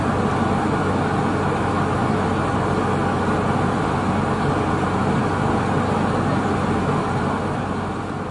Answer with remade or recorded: recorded